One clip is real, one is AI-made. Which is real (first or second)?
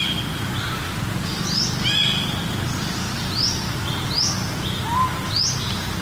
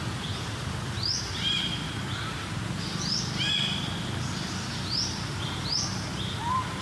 first